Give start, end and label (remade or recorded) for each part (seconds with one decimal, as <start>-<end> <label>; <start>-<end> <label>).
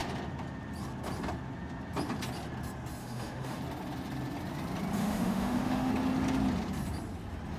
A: 0.0-3.0 recorded; 3.0-3.6 remade; 3.6-5.0 recorded; 5.0-5.9 remade; 5.9-7.6 recorded